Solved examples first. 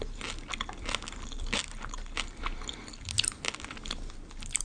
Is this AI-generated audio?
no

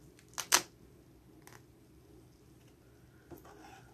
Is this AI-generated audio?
no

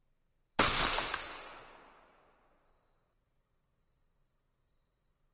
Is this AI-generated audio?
no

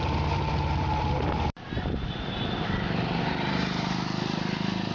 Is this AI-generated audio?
yes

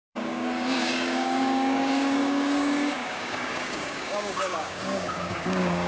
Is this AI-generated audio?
yes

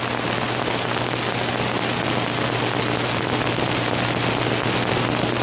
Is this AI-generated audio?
no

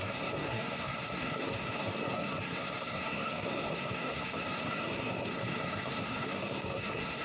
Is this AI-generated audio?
yes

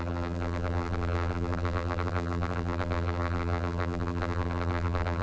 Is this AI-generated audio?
yes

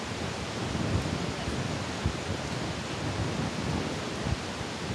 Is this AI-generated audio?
no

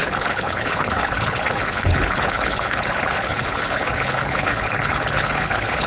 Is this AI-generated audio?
yes